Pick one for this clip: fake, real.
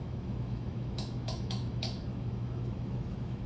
fake